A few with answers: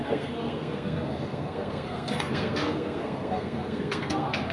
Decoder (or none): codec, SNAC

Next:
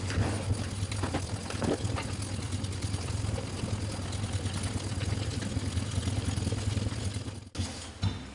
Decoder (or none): none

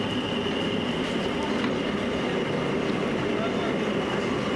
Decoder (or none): none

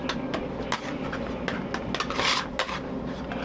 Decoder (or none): none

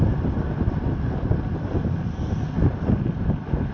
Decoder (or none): none